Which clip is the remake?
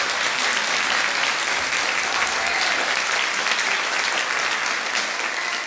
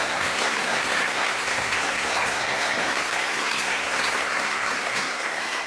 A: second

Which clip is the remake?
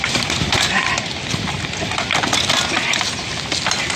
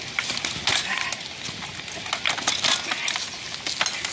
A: first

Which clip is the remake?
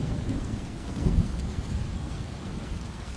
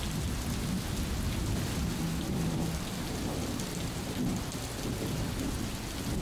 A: first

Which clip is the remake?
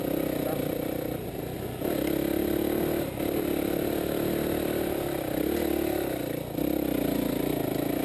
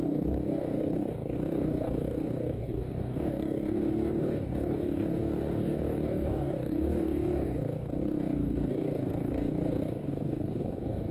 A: second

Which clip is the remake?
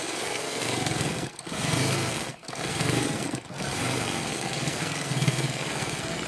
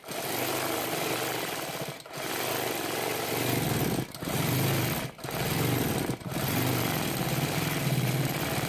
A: first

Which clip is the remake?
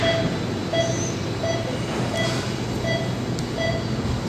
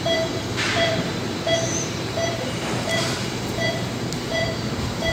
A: second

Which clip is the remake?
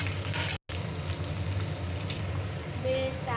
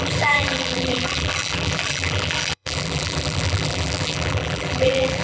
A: second